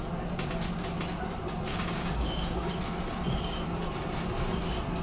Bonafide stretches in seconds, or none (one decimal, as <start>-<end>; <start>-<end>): 0.0-1.7; 2.8-5.0